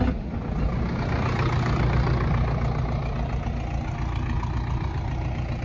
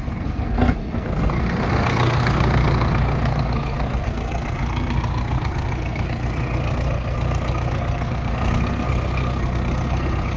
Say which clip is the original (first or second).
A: first